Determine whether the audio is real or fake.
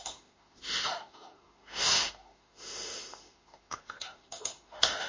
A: fake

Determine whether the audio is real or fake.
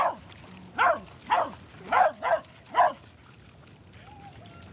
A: real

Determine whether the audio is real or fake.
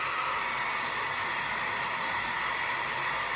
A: real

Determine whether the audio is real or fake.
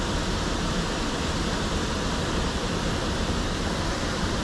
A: real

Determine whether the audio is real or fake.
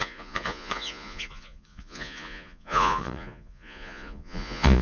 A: fake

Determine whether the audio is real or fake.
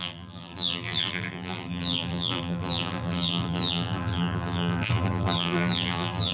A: fake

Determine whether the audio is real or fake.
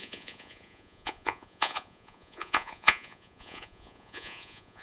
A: fake